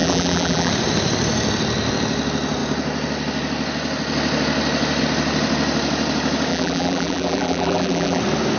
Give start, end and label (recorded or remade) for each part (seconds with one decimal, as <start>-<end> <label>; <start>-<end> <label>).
0.0-0.7 remade; 0.7-6.5 recorded; 6.5-8.2 remade; 8.2-8.6 recorded